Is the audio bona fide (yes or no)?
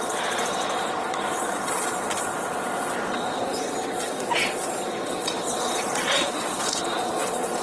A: no